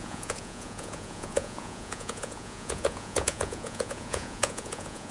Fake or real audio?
fake